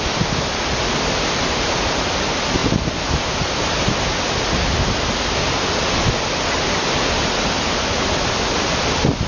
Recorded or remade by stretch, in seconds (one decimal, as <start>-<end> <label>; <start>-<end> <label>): 0.0-9.3 recorded